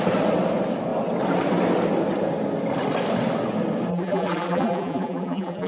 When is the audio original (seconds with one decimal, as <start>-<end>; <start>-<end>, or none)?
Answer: 0.0-3.9